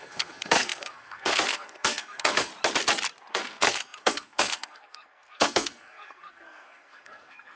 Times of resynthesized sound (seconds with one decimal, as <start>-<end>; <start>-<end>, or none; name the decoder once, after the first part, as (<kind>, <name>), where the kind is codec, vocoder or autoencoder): 0.0-2.5 (codec, SNAC); 3.3-7.6